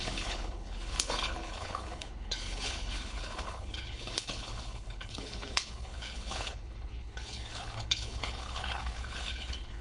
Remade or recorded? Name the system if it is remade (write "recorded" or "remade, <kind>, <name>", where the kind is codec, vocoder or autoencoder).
remade, codec, HILCodec